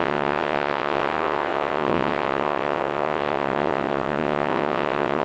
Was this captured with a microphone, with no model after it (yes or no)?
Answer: no